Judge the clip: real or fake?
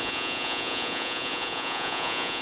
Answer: fake